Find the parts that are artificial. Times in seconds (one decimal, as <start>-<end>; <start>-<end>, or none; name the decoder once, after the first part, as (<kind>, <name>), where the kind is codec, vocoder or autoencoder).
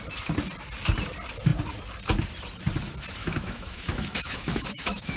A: 3.2-5.2 (autoencoder, DAC-VAE)